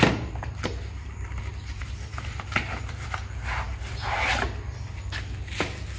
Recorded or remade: recorded